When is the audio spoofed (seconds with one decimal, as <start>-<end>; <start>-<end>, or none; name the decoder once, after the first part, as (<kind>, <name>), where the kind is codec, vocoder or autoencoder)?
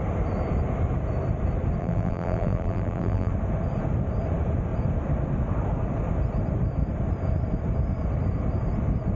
1.8-3.3 (vocoder, BigVGAN v2)